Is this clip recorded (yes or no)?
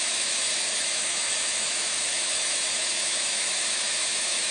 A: no